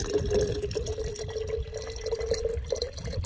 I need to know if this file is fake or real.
real